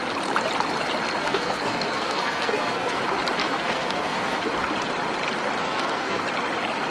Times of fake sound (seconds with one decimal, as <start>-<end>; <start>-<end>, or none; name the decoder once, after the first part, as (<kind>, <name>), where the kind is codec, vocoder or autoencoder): 1.2-3.0 (codec, SNAC); 3.4-4.5; 5.6-6.2